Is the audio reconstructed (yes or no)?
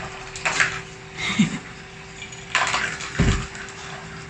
no